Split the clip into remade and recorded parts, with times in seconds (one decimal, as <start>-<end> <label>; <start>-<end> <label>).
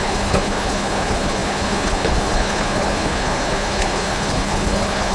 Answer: 0.0-5.1 remade